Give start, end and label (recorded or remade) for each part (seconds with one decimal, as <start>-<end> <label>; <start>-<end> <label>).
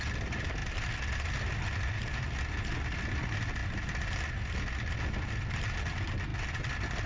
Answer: 0.0-7.1 recorded